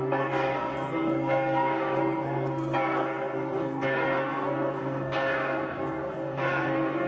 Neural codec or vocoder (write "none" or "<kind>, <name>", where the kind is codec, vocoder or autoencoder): codec, SNAC